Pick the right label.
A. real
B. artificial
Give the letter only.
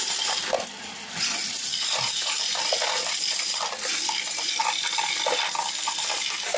A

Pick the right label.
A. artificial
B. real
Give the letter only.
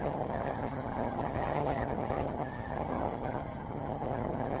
A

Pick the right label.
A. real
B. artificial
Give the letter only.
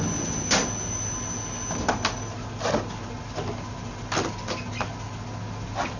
A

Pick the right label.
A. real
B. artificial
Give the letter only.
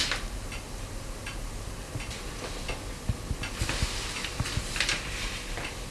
A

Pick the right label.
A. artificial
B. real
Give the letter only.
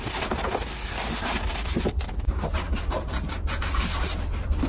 B